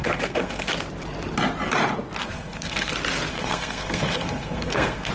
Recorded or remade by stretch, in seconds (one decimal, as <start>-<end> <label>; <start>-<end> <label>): 0.0-0.7 remade; 0.7-2.2 recorded; 2.2-2.9 remade; 2.9-3.3 recorded; 3.3-5.1 remade